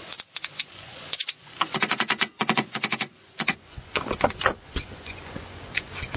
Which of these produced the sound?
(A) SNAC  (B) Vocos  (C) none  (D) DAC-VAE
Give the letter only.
B